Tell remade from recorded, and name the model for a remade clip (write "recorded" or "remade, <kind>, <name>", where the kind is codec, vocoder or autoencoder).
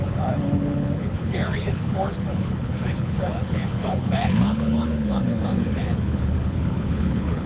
remade, codec, HILCodec